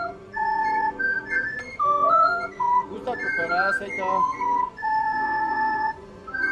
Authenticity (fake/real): fake